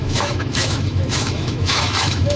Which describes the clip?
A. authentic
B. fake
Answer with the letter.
B